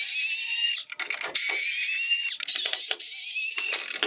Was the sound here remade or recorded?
recorded